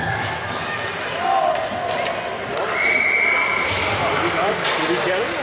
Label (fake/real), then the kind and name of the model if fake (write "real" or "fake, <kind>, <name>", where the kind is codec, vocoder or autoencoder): real